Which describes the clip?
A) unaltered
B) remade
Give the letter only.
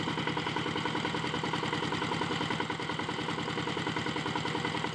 A